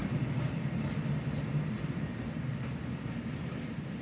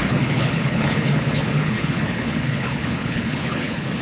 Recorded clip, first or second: first